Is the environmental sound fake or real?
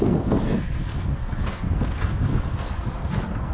fake